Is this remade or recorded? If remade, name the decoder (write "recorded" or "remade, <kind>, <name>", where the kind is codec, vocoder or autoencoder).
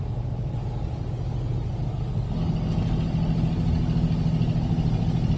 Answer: recorded